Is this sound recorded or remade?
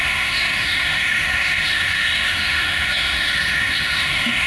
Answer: remade